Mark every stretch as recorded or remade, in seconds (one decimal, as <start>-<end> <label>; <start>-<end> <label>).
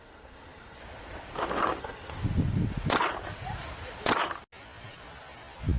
0.0-0.8 remade; 0.8-1.8 recorded; 1.8-2.2 remade; 2.2-5.8 recorded